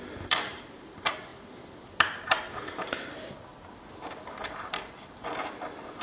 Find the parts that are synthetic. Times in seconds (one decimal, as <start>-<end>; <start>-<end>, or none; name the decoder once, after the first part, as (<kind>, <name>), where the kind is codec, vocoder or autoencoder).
0.0-1.3 (vocoder, BigVGAN v2); 4.5-6.0